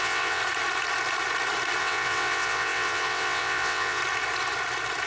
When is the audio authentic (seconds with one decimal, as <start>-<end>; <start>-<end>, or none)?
0.4-1.8; 4.0-5.1